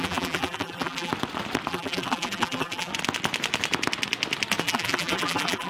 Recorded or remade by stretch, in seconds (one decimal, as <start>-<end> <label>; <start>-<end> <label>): 0.0-1.1 remade; 1.1-1.7 recorded; 1.7-2.9 remade; 2.9-4.6 recorded; 4.6-5.7 remade